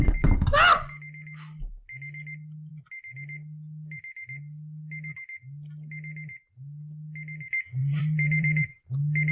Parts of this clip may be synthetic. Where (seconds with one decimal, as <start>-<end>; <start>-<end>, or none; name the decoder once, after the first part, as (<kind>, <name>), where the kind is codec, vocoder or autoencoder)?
7.8-8.9 (vocoder, BigVGAN v2)